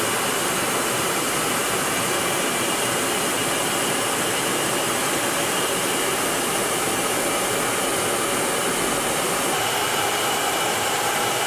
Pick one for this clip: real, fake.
fake